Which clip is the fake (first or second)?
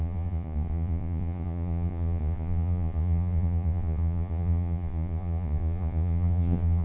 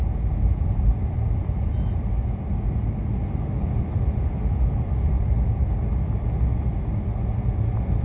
first